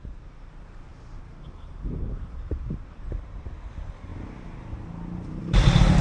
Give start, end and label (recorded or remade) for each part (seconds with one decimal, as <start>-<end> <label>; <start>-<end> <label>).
0.0-0.9 remade; 0.9-1.6 recorded; 1.6-4.1 remade; 4.1-5.4 recorded; 5.4-6.0 remade